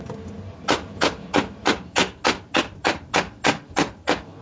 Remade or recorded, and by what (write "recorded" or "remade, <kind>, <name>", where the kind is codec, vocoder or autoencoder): recorded